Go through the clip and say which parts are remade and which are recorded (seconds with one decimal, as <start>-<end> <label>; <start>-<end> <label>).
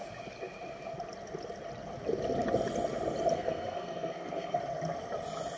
0.0-3.3 recorded; 3.3-4.6 remade; 4.6-5.6 recorded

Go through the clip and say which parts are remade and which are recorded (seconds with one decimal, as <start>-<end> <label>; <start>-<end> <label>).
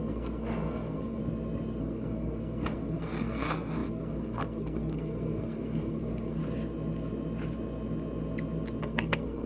0.0-1.2 remade; 1.2-1.8 recorded; 1.8-6.4 remade; 6.4-8.8 recorded; 8.8-9.5 remade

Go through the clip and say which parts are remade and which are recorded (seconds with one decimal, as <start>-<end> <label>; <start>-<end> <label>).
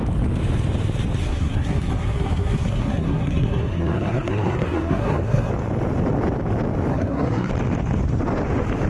0.0-1.2 recorded; 1.2-5.5 remade; 5.5-6.9 recorded; 6.9-7.5 remade; 7.5-8.9 recorded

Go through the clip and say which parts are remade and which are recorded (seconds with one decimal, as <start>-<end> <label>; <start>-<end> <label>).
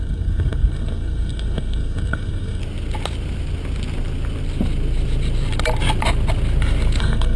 0.0-2.6 remade; 2.6-7.0 recorded; 7.0-7.4 remade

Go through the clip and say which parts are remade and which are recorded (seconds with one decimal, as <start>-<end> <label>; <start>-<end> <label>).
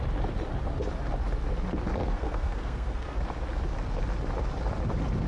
0.0-2.0 recorded; 2.0-3.2 remade; 3.2-5.3 recorded